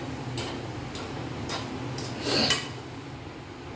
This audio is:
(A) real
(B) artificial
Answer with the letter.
A